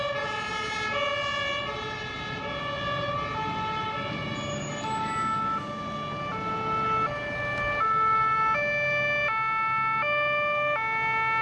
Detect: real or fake real